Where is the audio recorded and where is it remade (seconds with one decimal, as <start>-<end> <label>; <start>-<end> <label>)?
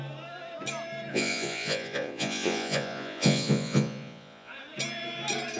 0.0-1.1 recorded; 1.1-4.5 remade; 4.5-5.6 recorded